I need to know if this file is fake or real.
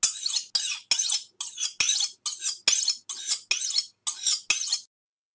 real